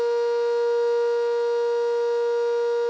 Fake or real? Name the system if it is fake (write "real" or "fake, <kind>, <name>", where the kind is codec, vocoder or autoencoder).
real